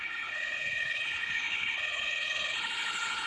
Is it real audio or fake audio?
fake